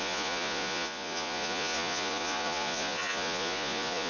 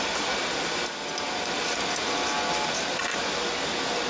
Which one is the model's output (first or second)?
first